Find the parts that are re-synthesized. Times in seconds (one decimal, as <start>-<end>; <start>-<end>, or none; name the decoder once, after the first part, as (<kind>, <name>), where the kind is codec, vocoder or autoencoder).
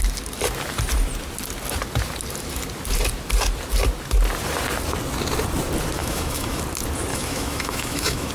6.0-6.6 (autoencoder, DAC-VAE); 7.1-8.3